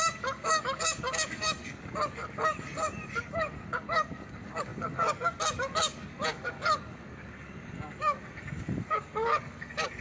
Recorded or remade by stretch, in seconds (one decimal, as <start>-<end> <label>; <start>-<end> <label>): 0.0-10.0 remade